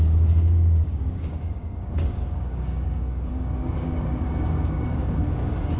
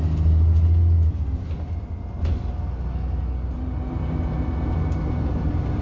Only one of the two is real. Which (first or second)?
second